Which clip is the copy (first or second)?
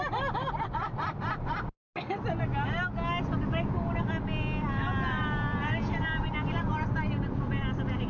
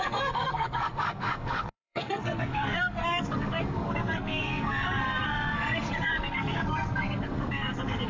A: second